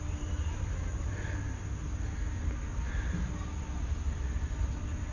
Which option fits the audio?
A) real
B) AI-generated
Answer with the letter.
A